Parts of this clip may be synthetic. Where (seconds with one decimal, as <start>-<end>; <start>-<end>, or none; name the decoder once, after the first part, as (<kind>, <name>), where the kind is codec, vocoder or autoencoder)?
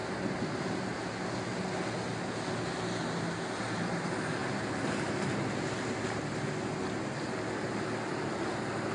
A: none